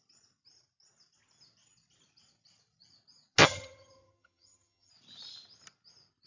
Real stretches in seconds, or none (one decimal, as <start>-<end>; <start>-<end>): 0.0-3.4; 4.9-6.3